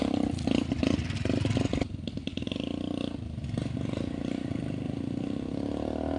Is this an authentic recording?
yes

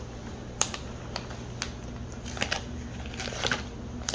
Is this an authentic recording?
yes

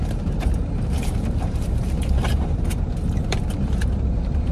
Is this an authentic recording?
no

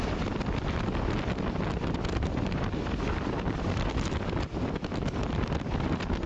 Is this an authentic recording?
no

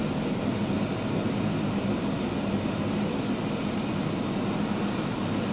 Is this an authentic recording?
yes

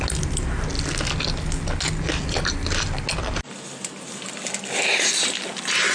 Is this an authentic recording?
yes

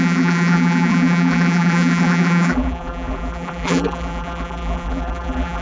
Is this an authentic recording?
no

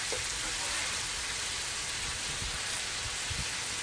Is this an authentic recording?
yes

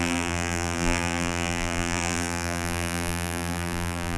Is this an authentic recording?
no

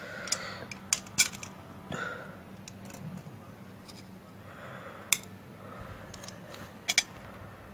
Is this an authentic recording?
yes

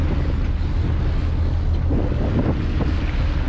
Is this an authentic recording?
yes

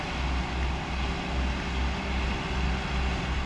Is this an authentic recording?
yes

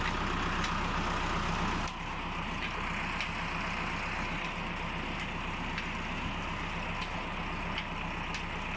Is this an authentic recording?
yes